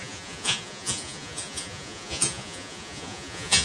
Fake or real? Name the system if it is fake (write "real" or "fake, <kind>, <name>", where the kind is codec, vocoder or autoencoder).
fake, vocoder, Vocos